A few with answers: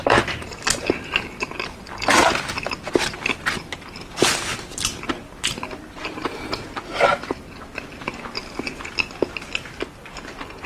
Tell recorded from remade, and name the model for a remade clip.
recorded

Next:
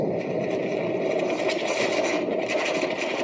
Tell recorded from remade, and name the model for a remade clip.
remade, vocoder, BigVGAN v2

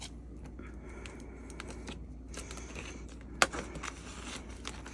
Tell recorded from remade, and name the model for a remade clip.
recorded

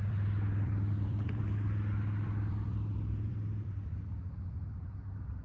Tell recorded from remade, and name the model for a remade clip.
remade, vocoder, BigVGAN v2